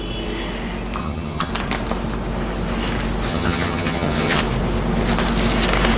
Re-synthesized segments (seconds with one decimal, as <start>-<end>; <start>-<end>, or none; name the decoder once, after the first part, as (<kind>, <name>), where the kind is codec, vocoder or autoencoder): 1.0-1.5 (vocoder, HiFi-GAN); 3.3-4.4